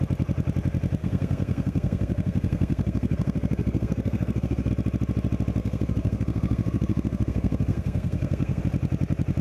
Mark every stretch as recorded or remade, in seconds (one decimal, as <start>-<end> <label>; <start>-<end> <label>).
0.0-1.0 recorded; 1.0-4.7 remade; 4.7-5.6 recorded; 5.6-8.6 remade; 8.6-9.4 recorded